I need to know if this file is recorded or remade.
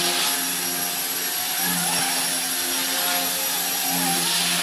recorded